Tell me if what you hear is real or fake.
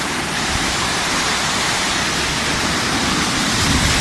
fake